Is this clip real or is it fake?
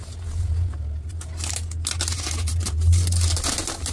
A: real